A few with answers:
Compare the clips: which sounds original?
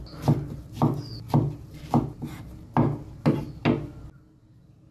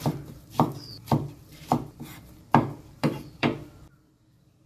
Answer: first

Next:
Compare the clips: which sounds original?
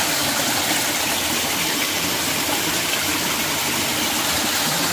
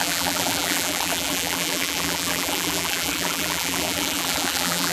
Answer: first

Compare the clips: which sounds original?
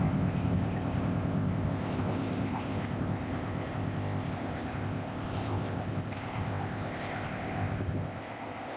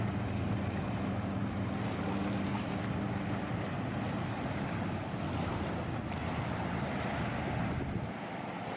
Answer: second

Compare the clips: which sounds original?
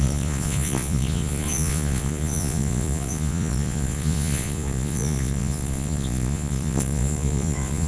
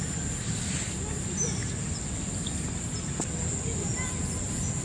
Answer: second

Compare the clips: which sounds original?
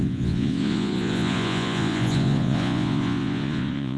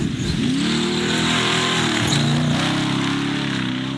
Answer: second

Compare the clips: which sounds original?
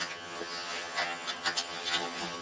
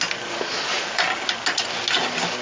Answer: second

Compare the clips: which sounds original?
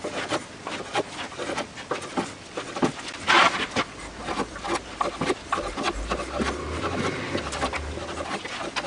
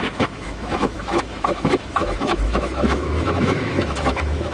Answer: first